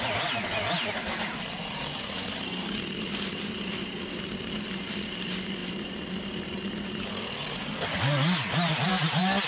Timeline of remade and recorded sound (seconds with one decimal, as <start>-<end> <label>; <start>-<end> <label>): 0.0-9.5 recorded